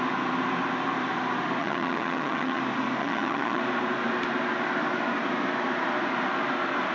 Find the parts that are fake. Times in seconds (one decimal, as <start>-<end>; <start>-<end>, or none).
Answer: 1.6-2.6; 3.0-3.6

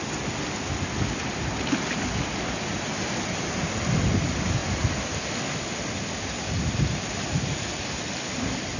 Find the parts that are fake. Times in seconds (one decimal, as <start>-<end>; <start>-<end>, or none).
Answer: none

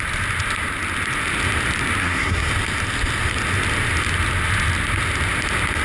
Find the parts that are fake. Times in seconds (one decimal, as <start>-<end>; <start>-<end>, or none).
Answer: 2.0-2.5

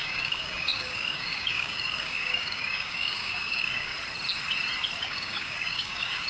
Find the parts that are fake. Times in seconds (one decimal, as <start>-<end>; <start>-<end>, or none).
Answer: 0.0-3.9; 5.0-6.3

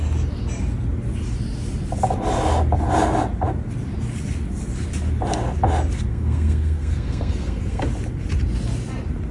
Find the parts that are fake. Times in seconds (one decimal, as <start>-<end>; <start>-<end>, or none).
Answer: 6.1-7.8

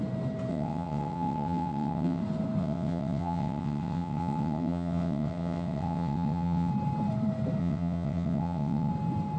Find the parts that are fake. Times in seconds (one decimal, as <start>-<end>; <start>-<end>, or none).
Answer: 0.5-2.2; 2.6-6.7; 7.6-8.9

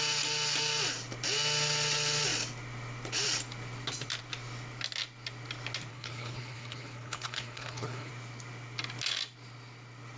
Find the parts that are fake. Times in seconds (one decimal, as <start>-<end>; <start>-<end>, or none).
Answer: 5.9-8.1